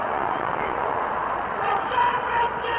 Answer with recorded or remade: remade